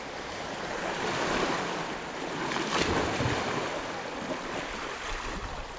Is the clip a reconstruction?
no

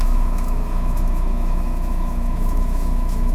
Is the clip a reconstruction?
yes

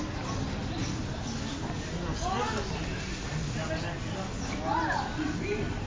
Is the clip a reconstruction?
no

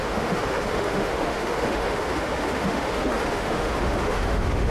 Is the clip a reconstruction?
yes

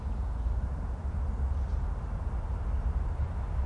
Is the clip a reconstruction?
no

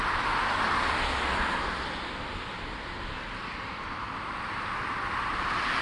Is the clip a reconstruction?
yes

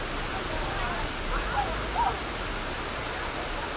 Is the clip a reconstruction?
no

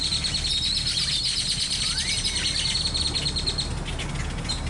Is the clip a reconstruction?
no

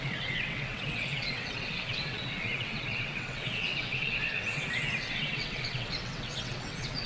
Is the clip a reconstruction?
yes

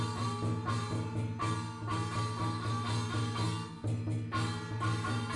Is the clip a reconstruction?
no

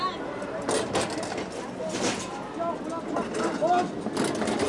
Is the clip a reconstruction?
no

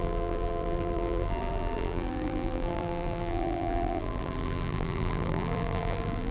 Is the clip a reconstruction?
yes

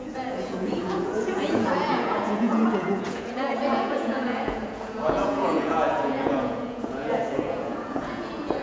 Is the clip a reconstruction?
yes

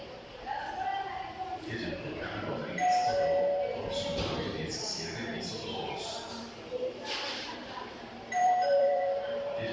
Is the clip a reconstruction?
yes